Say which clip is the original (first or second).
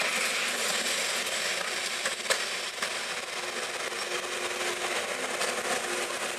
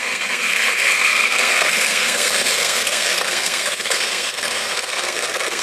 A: first